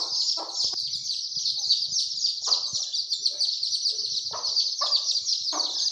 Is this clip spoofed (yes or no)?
no